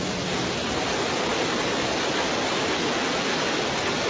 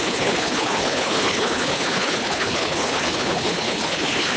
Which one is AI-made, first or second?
second